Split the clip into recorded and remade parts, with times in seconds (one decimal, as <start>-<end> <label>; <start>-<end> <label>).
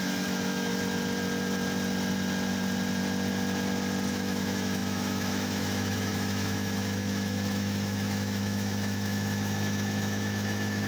0.0-0.7 remade; 0.7-4.1 recorded; 4.1-10.9 remade